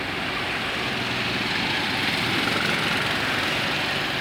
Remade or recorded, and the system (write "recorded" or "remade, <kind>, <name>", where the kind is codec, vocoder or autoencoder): recorded